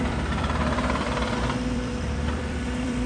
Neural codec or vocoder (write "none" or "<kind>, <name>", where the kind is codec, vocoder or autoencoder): vocoder, BigVGAN v2